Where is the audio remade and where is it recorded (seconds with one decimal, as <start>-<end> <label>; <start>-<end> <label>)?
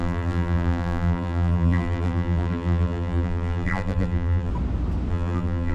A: 0.0-4.5 remade; 4.5-5.1 recorded; 5.1-5.7 remade